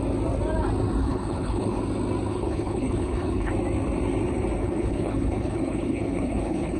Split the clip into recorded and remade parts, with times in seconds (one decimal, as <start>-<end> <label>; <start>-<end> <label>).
0.0-1.0 recorded; 1.0-1.8 remade; 1.8-2.3 recorded; 2.3-3.5 remade; 3.5-4.6 recorded; 4.6-6.8 remade